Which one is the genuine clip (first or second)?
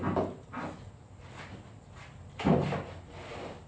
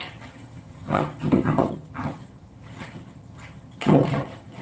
first